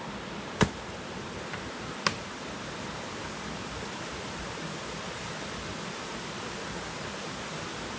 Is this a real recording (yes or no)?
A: yes